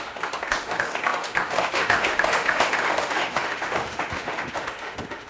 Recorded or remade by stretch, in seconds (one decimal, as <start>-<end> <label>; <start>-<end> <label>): 0.0-5.3 remade